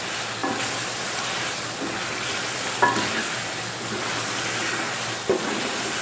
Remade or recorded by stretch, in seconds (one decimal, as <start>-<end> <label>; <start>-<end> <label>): 0.0-6.0 recorded